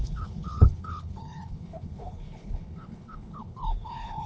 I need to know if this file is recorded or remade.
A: remade